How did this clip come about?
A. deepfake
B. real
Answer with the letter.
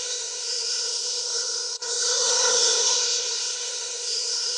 A